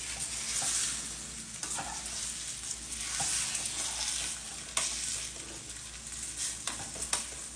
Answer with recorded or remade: recorded